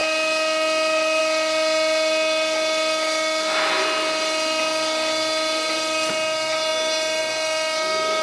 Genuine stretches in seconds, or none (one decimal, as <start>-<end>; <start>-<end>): 0.0-8.2